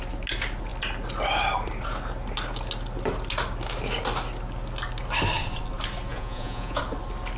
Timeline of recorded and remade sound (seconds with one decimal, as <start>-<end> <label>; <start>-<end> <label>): 0.0-6.1 recorded; 6.1-6.8 remade; 6.8-7.4 recorded

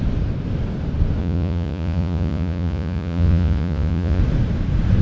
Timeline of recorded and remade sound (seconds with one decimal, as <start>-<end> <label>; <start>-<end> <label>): 0.0-1.2 recorded; 1.2-4.2 remade; 4.2-5.0 recorded

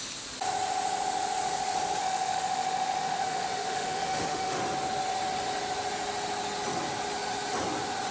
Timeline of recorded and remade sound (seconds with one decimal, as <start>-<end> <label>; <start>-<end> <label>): 0.0-2.0 recorded; 2.0-4.6 remade; 4.6-8.1 recorded

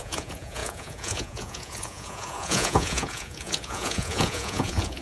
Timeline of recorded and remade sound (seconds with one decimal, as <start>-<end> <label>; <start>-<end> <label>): 0.0-5.0 remade